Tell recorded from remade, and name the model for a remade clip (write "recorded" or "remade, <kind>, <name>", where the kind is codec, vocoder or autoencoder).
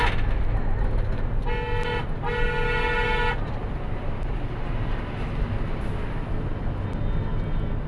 recorded